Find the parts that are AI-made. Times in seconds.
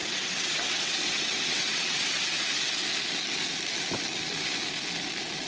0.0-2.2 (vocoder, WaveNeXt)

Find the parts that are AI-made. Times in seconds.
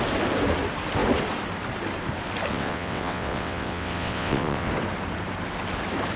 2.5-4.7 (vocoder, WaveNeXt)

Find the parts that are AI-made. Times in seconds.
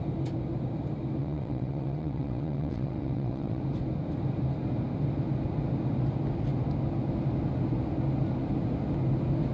1.2-3.6 (vocoder, WaveNeXt)